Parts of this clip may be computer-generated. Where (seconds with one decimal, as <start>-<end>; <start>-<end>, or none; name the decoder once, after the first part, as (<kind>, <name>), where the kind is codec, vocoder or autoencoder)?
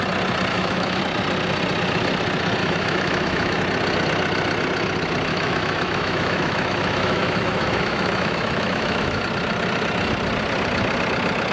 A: 0.5-1.0 (autoencoder, DAC-VAE); 2.6-3.6; 5.3-9.2